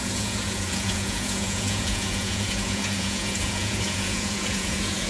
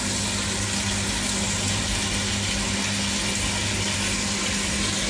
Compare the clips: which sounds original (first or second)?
second